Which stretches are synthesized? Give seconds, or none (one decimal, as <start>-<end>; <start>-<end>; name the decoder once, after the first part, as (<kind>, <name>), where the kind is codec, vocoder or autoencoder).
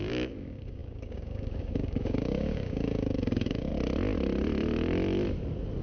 0.0-3.7 (codec, DAC)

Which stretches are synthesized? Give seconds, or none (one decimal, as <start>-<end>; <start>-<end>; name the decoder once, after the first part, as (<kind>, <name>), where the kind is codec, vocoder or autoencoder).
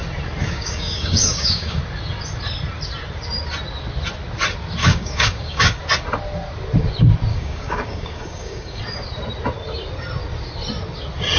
0.4-1.8 (codec, DAC); 4.8-5.8; 7.3-8.8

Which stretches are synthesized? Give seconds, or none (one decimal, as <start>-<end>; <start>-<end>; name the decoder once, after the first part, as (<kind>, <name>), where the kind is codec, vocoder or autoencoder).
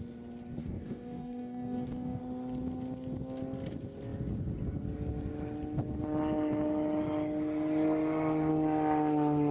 0.6-2.2 (codec, DAC)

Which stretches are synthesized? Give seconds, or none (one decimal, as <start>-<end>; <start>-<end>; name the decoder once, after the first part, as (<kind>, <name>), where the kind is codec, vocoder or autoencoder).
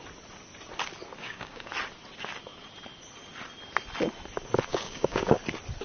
1.2-1.7 (codec, DAC); 4.7-5.3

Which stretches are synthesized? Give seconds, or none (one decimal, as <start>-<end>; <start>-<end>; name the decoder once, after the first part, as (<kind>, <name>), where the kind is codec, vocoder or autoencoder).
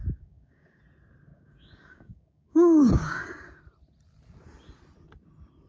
0.0-0.8 (codec, DAC); 1.3-3.6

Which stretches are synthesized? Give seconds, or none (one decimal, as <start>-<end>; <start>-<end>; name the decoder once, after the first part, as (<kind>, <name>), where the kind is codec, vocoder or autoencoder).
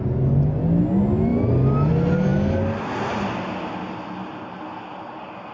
none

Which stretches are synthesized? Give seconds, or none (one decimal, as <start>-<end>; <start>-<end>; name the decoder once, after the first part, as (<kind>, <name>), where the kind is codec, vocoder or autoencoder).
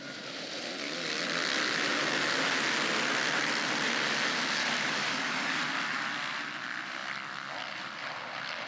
4.6-5.6 (codec, DAC)